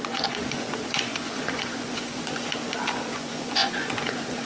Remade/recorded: remade